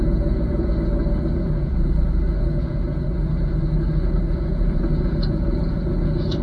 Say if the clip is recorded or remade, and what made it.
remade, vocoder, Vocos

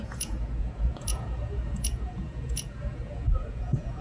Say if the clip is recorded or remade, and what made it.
remade, vocoder, Vocos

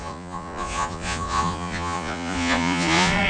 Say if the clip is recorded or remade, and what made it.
remade, vocoder, Vocos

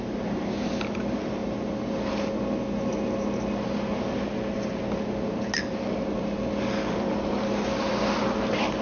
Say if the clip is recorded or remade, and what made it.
recorded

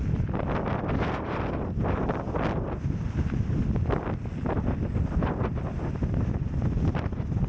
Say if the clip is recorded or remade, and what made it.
recorded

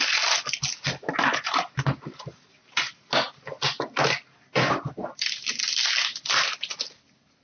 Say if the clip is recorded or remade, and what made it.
recorded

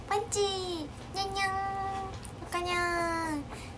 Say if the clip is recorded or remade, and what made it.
recorded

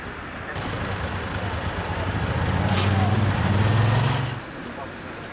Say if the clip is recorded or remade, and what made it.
recorded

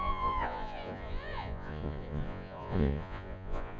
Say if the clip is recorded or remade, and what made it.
remade, vocoder, Vocos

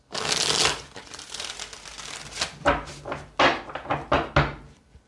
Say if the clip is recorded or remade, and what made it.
recorded